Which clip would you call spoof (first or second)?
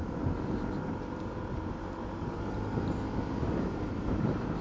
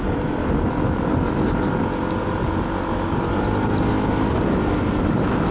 first